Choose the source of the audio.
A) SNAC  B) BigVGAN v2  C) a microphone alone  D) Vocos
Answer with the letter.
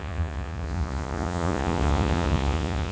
D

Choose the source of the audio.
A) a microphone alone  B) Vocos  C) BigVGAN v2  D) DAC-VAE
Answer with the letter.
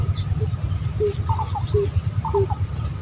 A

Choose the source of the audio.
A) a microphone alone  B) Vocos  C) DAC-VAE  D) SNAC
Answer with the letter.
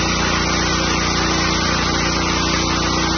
A